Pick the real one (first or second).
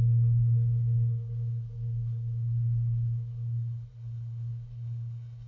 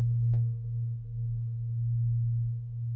second